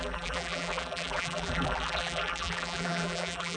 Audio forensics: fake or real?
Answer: fake